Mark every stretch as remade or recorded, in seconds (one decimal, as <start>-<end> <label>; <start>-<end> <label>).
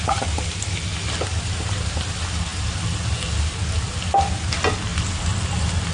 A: 0.0-1.3 recorded; 1.3-2.1 remade; 2.1-5.9 recorded